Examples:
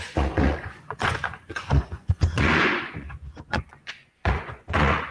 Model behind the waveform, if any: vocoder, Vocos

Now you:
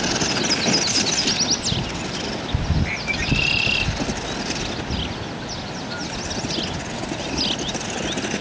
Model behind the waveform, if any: none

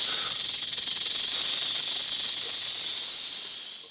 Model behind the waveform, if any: none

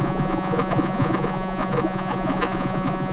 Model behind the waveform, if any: vocoder, Vocos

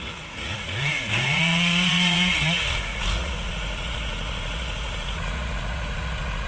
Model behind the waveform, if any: vocoder, Vocos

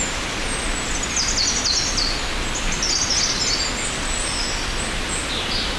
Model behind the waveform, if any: none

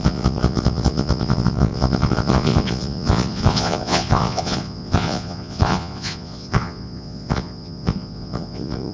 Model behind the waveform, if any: vocoder, Vocos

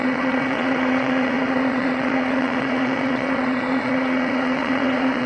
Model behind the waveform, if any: vocoder, Vocos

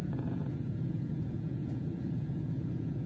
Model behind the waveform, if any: vocoder, Vocos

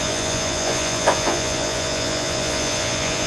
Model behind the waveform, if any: vocoder, Vocos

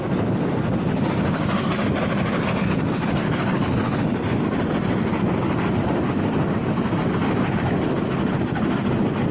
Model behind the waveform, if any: none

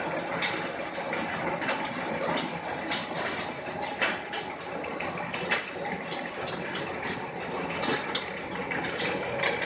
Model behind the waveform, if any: none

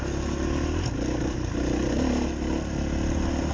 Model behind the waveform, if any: none